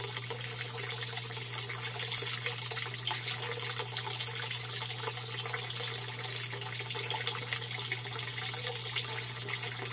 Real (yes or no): yes